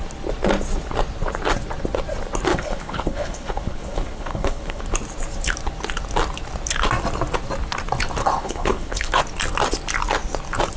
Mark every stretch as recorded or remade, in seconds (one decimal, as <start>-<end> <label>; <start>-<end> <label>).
0.0-2.5 recorded; 2.5-4.8 remade; 4.8-8.2 recorded; 8.2-9.2 remade; 9.2-10.8 recorded